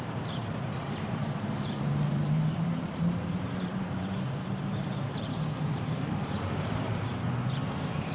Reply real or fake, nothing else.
fake